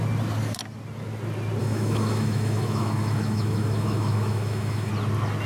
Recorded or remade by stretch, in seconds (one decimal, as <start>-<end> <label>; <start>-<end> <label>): 0.0-1.6 recorded; 1.6-4.9 remade; 4.9-5.5 recorded